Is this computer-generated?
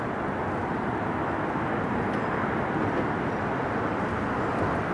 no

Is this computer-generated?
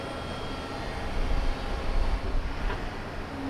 no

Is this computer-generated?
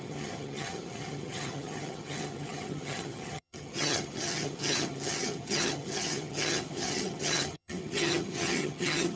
yes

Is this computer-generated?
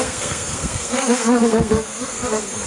yes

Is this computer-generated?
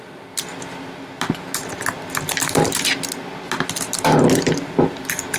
no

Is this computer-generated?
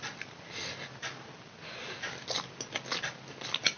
no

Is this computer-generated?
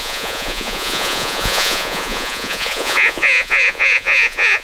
yes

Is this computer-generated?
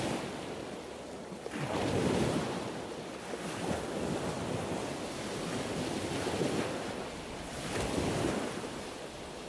no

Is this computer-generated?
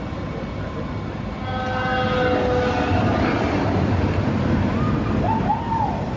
no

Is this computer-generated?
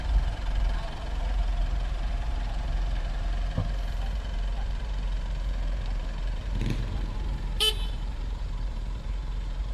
yes